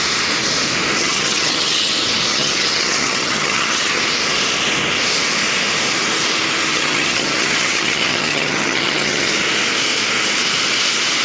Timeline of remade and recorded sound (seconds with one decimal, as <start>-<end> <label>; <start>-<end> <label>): 0.0-1.0 recorded; 1.0-1.9 remade; 1.9-2.3 recorded; 2.3-4.0 remade; 4.0-6.7 recorded; 6.7-9.3 remade; 9.3-11.2 recorded